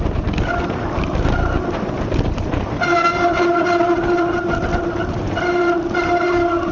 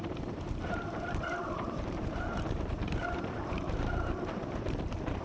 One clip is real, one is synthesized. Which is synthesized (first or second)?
second